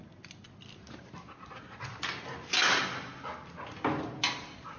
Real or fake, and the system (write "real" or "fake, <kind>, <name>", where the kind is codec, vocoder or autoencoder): real